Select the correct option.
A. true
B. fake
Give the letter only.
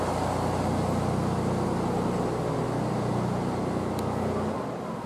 A